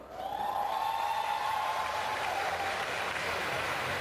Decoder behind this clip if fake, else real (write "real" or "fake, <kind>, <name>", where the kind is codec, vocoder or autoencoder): fake, vocoder, BigVGAN v2